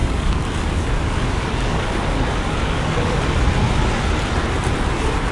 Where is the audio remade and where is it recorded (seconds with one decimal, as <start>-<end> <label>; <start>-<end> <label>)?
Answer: 0.0-3.2 remade; 3.2-5.3 recorded